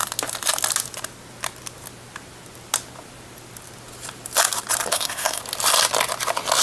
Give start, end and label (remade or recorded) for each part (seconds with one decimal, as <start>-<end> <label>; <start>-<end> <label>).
0.0-4.9 recorded; 4.9-5.4 remade; 5.4-6.6 recorded

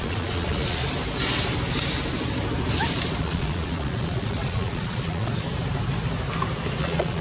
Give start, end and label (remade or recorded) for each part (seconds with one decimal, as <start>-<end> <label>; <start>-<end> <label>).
0.0-0.8 remade; 0.8-3.2 recorded; 3.2-5.3 remade; 5.3-6.8 recorded; 6.8-7.2 remade

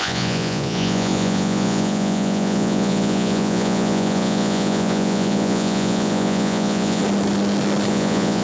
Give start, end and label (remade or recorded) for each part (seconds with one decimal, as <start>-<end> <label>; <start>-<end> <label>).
0.0-7.0 remade; 7.0-7.9 recorded; 7.9-8.4 remade